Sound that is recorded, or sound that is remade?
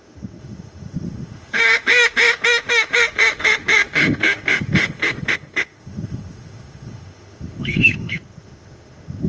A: remade